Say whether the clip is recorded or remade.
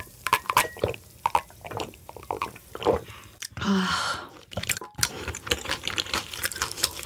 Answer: remade